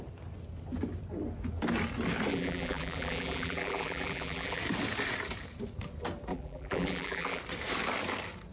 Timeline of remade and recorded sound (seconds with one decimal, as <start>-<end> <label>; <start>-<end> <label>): 0.0-2.3 recorded; 2.3-4.6 remade; 4.6-6.3 recorded; 6.3-7.4 remade; 7.4-8.5 recorded

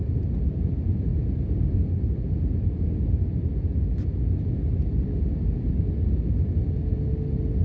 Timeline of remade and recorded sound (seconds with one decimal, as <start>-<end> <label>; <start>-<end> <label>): 0.0-7.6 recorded

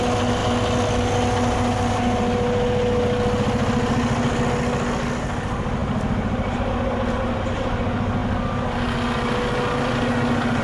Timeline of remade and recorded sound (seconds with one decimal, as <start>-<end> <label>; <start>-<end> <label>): 0.0-10.6 recorded